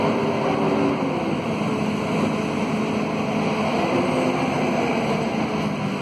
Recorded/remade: recorded